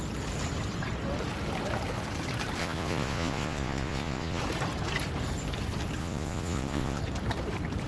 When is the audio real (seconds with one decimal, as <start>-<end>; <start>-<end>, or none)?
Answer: 0.0-2.6; 4.4-6.0; 7.0-7.9